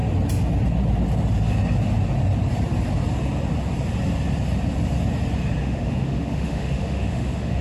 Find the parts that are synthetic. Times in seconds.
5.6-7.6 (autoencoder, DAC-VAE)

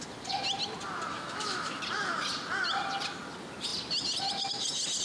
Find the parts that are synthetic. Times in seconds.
1.1-1.8 (autoencoder, DAC-VAE)

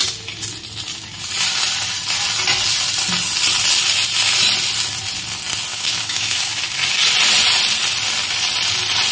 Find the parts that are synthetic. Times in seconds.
5.7-6.5 (autoencoder, DAC-VAE)

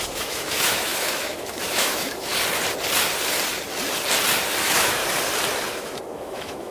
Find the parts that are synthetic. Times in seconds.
0.0-2.3 (autoencoder, DAC-VAE); 4.6-5.0; 5.7-6.7

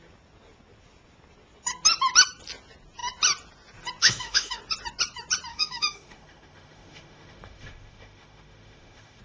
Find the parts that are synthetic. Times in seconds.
4.0-4.6 (autoencoder, DAC-VAE); 5.5-9.2